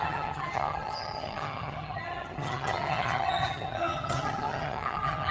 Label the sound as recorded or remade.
remade